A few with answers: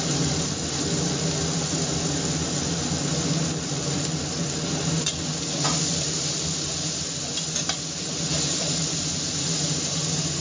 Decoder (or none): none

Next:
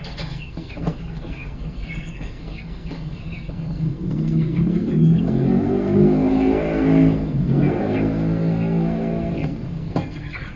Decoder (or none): codec, SNAC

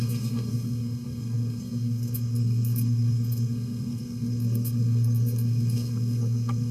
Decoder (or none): codec, SNAC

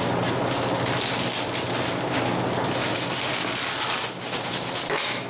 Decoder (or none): none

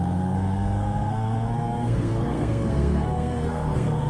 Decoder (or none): codec, SNAC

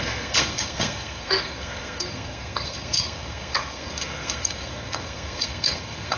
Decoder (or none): codec, SNAC